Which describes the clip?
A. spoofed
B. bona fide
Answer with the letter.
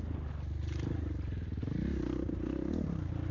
B